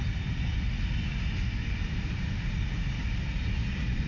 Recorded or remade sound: recorded